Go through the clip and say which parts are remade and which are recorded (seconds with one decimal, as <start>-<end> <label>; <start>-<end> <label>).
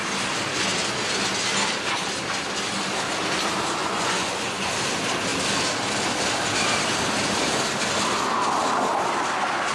0.0-3.8 recorded; 3.8-4.7 remade; 4.7-9.7 recorded